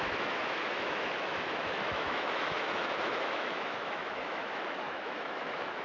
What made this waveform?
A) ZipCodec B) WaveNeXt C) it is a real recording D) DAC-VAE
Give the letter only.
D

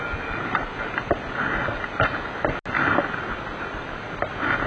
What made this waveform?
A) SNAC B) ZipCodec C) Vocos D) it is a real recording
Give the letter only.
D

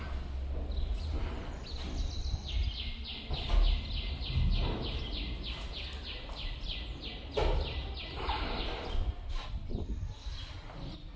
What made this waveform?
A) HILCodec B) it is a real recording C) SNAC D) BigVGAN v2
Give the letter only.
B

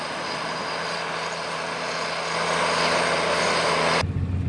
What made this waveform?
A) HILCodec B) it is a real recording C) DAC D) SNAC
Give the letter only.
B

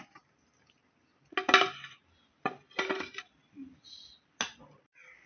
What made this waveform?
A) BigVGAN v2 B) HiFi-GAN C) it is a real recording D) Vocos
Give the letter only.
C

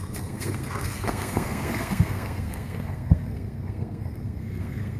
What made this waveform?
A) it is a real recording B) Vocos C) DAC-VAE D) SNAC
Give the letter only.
D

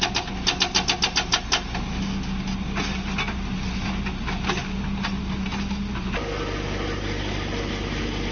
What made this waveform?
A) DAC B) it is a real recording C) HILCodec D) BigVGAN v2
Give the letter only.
B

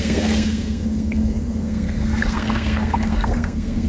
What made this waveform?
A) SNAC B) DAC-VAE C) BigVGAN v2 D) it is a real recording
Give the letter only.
A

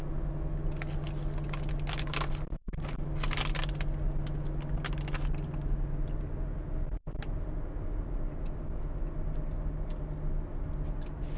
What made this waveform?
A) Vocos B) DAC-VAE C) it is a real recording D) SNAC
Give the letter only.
C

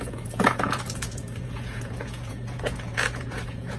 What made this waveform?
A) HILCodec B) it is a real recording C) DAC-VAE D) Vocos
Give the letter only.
D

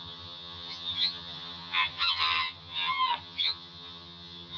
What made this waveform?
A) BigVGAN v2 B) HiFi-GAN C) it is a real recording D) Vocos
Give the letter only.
B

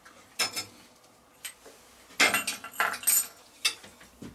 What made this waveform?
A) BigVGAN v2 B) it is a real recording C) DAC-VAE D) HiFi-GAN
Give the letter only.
B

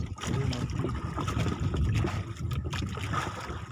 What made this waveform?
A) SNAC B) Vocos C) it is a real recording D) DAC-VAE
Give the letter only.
C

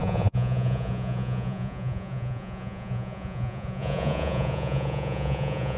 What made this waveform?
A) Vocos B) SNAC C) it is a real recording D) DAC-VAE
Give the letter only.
A